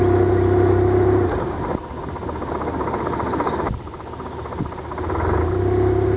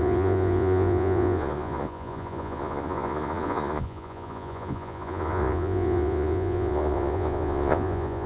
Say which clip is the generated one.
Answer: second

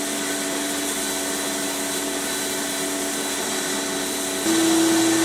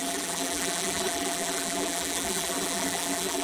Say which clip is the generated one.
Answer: second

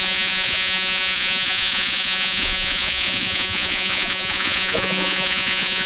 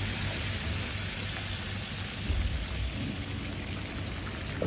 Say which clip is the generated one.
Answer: first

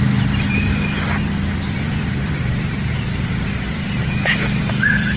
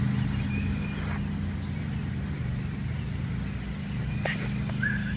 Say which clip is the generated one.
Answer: first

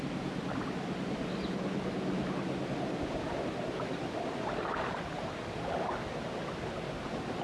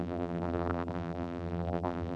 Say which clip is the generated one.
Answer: second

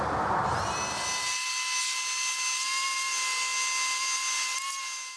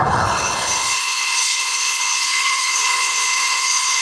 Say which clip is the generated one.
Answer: second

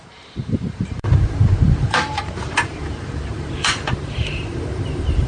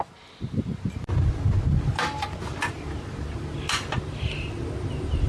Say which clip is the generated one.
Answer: first